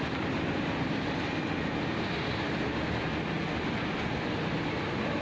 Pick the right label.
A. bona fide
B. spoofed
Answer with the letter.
A